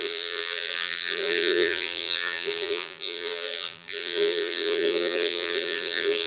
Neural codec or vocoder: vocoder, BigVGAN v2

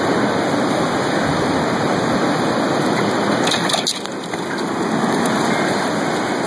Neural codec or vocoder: none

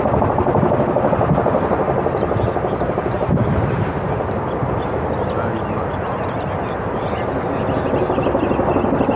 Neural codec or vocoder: none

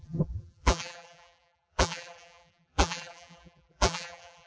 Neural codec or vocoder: vocoder, BigVGAN v2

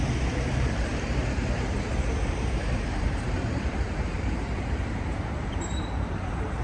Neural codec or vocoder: vocoder, BigVGAN v2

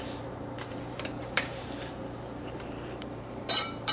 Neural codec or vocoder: vocoder, BigVGAN v2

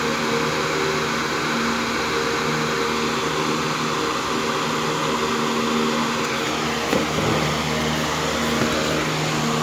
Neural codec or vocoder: none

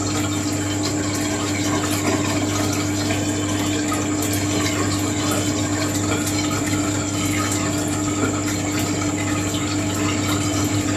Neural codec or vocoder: none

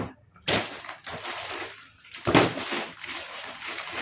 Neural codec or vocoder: vocoder, BigVGAN v2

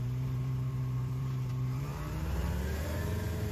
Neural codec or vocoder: vocoder, BigVGAN v2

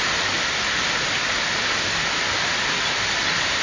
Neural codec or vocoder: none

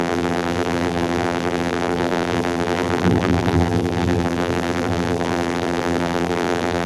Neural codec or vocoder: vocoder, BigVGAN v2